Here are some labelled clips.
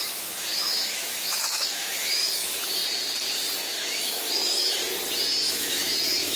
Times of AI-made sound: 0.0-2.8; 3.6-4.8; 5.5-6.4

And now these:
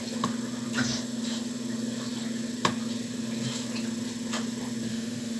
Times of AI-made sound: 4.9-5.4